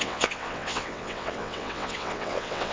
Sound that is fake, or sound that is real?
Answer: fake